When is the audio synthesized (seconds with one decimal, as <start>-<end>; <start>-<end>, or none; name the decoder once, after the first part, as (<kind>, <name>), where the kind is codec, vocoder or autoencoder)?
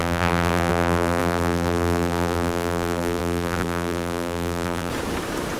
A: 0.0-4.9 (vocoder, BigVGAN v2)